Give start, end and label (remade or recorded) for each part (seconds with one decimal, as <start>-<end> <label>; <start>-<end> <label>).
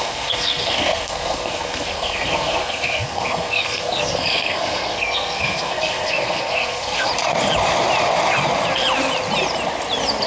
0.0-7.1 remade; 7.1-10.3 recorded